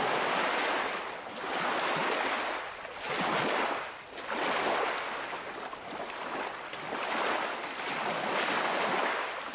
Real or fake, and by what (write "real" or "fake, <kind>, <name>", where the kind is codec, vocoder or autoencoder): real